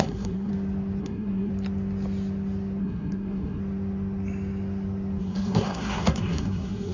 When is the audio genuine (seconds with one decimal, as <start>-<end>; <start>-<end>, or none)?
0.5-1.0; 1.5-2.8; 3.6-5.2